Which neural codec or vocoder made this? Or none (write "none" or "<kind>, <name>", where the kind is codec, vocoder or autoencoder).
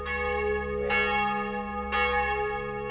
none